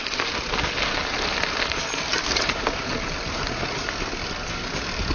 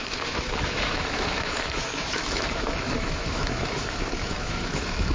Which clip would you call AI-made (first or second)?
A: second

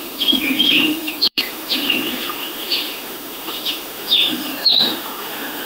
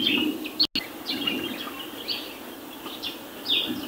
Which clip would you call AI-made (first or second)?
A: first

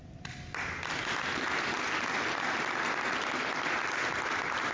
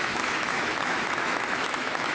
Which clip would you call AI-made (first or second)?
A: second